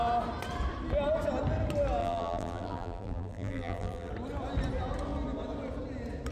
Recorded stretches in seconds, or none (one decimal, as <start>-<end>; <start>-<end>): 0.0-2.0; 4.1-6.3